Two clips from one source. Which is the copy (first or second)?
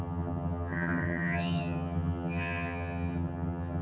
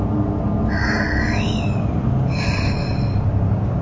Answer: first